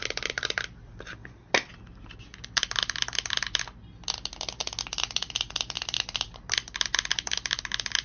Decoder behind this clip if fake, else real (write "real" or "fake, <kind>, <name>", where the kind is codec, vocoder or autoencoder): real